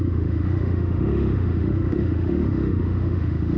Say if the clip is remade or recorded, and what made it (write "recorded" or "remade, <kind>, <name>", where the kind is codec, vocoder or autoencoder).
remade, autoencoder, DAC-VAE